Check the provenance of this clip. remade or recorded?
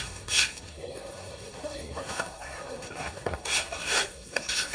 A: remade